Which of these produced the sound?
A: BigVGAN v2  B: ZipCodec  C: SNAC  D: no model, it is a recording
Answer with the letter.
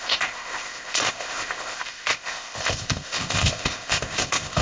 B